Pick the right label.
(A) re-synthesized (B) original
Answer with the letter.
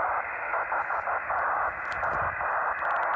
B